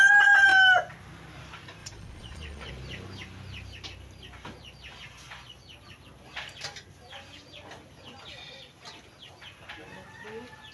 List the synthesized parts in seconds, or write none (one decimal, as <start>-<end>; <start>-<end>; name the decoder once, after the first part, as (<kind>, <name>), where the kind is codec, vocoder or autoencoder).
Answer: 1.8-2.7 (vocoder, Vocos)